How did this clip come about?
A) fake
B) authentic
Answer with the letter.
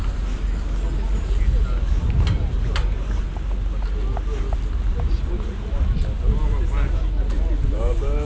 B